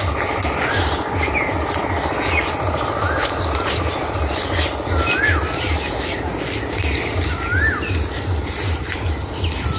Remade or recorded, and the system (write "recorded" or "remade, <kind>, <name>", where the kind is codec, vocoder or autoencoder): recorded